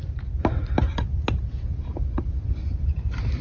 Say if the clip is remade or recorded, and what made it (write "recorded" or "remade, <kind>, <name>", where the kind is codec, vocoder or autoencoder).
recorded